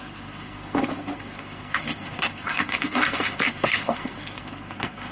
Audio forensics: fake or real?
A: fake